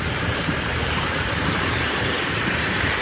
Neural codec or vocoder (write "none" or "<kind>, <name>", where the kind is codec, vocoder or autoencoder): vocoder, BigVGAN v2